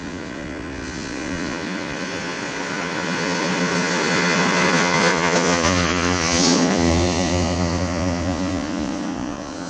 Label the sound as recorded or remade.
remade